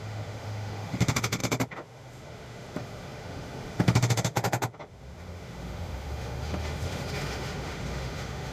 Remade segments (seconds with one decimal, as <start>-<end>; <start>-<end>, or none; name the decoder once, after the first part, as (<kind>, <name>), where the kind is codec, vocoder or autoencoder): 0.0-8.5 (autoencoder, DAC-VAE)